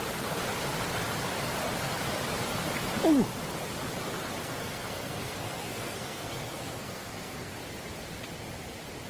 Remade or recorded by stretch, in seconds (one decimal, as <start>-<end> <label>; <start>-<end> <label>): 0.0-4.4 recorded; 4.4-7.5 remade; 7.5-9.1 recorded